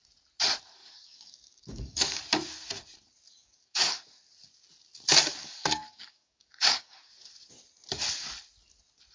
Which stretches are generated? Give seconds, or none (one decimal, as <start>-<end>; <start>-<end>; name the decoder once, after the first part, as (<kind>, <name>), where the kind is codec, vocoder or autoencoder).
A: 0.8-2.2 (codec, DAC); 3.3-4.2; 5.4-7.1